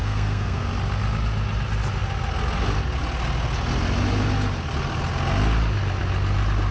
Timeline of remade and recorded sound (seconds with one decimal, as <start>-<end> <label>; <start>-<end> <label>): 0.0-0.7 remade; 0.7-6.7 recorded